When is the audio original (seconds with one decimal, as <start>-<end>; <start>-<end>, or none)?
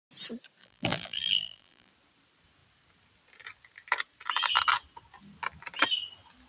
0.0-0.6; 1.9-6.5